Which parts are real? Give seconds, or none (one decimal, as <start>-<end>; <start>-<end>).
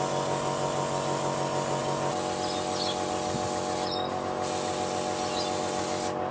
0.0-6.3